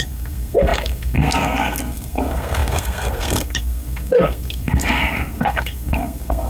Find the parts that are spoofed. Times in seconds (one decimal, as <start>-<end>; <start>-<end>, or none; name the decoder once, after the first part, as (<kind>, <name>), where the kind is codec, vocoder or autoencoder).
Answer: 0.0-6.5 (codec, SNAC)